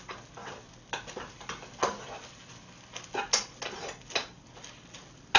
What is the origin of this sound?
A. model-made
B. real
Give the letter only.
B